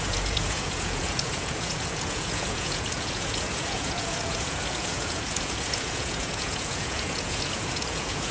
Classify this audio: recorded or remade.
remade